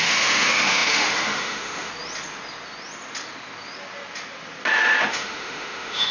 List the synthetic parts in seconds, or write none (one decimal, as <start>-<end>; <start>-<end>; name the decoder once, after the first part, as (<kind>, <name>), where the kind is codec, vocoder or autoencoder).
0.0-1.9 (autoencoder, DAC-VAE); 5.1-6.1